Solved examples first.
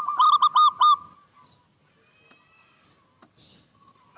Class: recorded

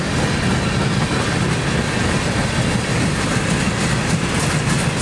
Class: recorded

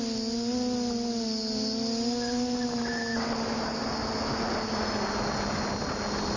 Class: recorded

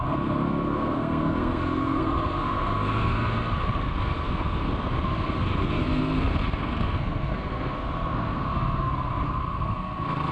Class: remade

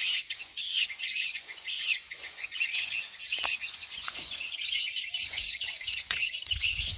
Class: remade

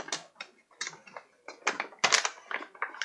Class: recorded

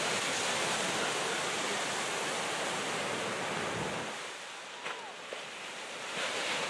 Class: recorded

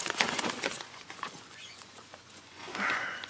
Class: remade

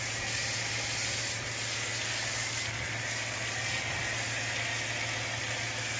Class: recorded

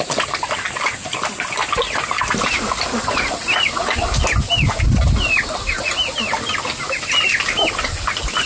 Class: recorded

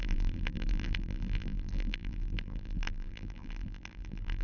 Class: remade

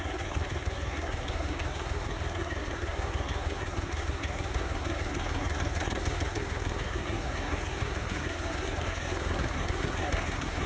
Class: remade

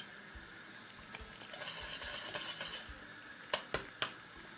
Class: recorded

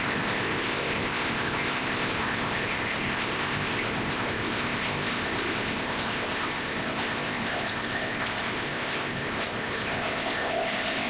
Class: remade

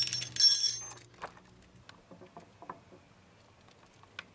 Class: recorded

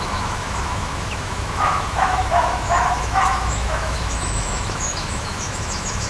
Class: remade